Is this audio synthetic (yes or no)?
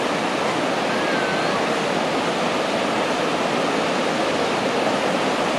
no